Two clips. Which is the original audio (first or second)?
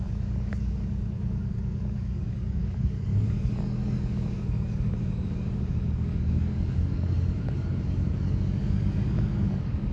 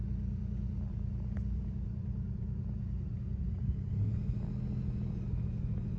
second